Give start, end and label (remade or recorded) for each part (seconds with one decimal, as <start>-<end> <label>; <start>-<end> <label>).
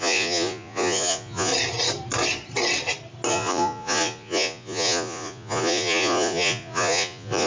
0.0-1.5 remade; 1.5-3.3 recorded; 3.3-7.5 remade